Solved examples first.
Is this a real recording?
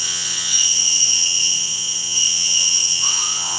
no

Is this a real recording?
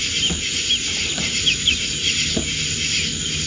yes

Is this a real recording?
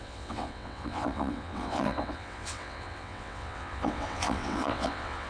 no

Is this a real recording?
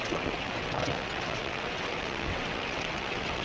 no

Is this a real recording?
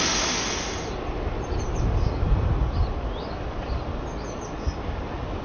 yes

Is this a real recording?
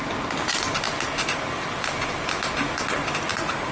yes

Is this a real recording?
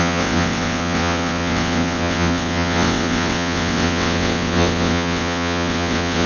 no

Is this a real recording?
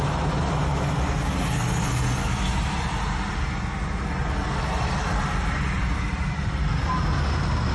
yes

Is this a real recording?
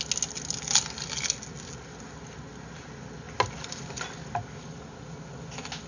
yes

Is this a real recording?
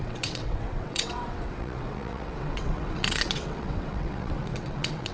no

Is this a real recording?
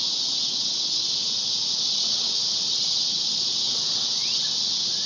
no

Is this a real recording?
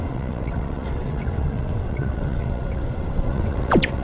no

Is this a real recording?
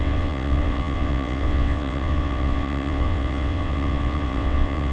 no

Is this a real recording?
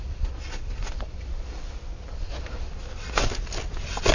yes